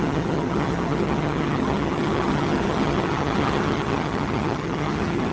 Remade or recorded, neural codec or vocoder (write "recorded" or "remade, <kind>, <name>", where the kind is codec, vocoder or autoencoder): remade, vocoder, HiFi-GAN